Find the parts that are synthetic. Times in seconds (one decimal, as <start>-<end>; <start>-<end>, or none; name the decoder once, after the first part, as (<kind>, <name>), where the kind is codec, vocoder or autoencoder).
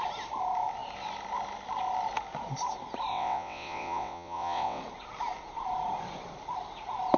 3.1-4.8 (vocoder, WaveNeXt)